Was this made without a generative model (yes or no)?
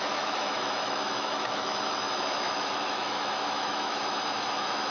no